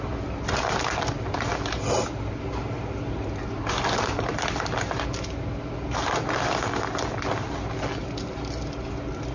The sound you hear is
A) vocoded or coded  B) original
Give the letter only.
B